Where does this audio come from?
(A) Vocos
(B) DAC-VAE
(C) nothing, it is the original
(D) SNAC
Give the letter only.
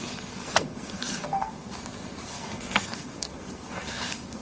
D